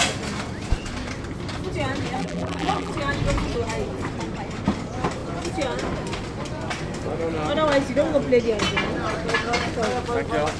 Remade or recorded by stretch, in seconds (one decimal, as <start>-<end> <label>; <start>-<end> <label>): 0.0-2.2 recorded; 2.2-2.9 remade; 2.9-10.6 recorded